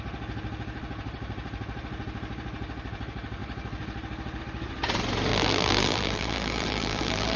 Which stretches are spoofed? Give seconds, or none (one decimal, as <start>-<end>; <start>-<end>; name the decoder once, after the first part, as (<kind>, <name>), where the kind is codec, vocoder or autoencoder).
5.3-7.4 (vocoder, BigVGAN v2)